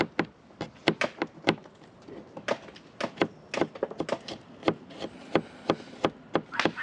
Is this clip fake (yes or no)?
no